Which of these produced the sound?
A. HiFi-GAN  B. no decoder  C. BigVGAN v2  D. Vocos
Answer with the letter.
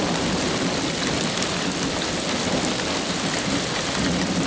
B